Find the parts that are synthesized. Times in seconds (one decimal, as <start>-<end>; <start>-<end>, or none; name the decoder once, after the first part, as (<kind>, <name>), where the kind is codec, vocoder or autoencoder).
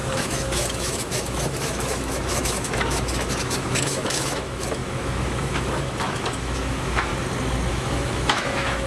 0.0-7.1 (autoencoder, DAC-VAE); 7.7-8.9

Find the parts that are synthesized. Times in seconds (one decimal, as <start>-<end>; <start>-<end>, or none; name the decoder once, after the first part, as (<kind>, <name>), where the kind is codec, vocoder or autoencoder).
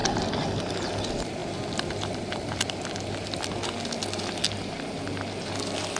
1.4-2.7 (vocoder, BigVGAN v2)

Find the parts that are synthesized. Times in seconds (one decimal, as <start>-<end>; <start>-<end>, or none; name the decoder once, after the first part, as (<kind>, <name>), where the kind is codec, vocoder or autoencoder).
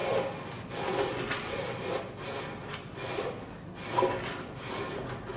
none